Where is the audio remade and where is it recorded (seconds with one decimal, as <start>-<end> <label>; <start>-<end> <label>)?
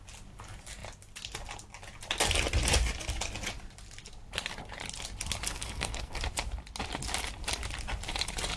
0.0-5.5 recorded; 5.5-6.2 remade; 6.2-8.6 recorded